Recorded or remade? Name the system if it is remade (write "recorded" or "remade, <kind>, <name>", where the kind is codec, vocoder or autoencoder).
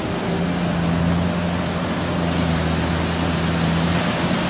recorded